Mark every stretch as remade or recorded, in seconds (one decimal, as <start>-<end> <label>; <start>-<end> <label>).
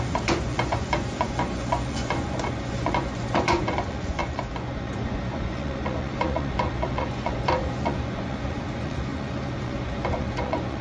0.0-10.8 remade